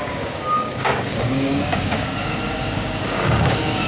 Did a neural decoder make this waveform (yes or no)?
yes